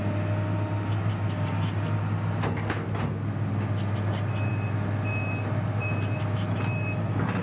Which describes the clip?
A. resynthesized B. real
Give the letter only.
B